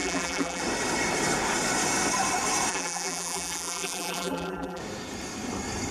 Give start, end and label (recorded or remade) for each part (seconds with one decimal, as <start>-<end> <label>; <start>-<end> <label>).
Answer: 0.0-0.6 remade; 0.6-2.7 recorded; 2.7-4.8 remade; 4.8-5.9 recorded